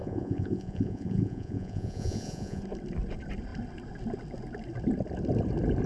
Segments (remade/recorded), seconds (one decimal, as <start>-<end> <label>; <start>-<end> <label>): 0.0-2.6 remade; 2.6-5.9 recorded